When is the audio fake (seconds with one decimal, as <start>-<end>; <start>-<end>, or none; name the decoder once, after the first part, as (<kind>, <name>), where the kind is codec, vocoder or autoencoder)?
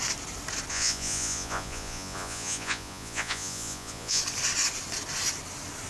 0.7-4.2 (vocoder, Vocos)